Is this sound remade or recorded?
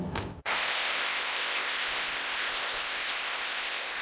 remade